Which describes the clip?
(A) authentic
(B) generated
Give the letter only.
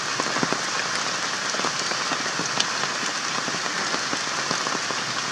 A